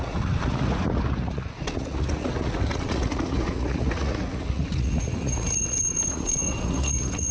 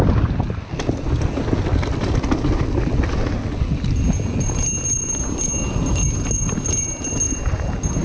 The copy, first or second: first